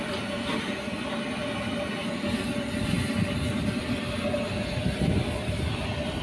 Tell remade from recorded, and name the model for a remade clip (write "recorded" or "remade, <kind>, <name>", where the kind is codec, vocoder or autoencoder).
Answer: recorded